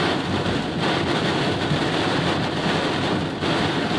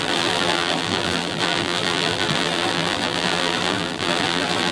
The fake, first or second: second